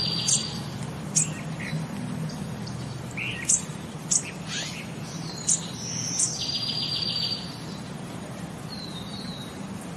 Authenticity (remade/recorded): remade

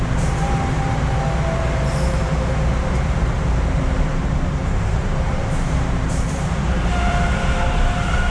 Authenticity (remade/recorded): remade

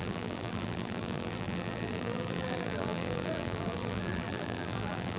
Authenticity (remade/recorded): remade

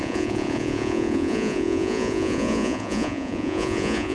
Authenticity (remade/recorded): remade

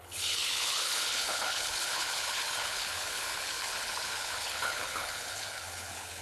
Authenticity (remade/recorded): remade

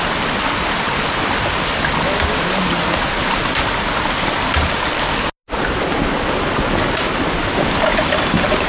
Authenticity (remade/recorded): recorded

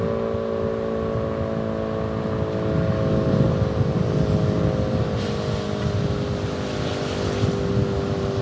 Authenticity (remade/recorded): recorded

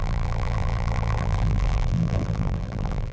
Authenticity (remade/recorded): remade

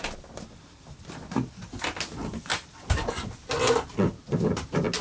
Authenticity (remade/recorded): recorded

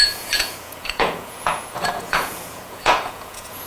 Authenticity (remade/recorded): remade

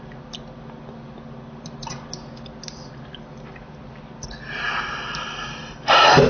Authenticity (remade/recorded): recorded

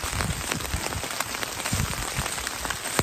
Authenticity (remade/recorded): recorded